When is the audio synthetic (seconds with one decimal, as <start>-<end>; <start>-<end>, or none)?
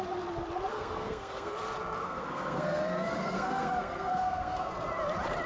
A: 0.7-1.5; 2.0-4.7